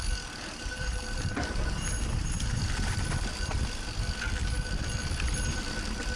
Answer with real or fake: fake